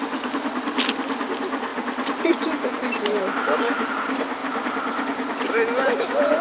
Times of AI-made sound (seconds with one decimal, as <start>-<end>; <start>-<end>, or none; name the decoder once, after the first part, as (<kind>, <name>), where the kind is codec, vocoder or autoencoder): 1.7-3.9 (vocoder, BigVGAN v2)